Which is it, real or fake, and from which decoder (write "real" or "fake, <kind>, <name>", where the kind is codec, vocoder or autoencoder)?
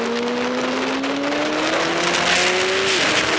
real